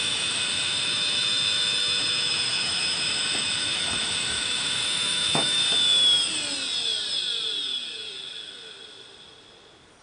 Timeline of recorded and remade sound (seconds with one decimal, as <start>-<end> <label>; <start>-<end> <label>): 0.0-5.6 remade; 5.6-10.0 recorded